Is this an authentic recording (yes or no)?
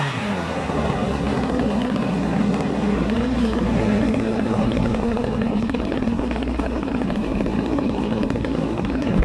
no